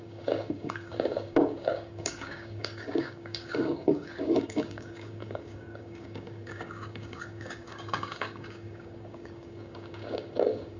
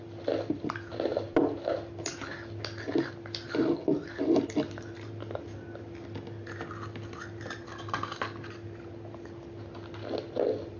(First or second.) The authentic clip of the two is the second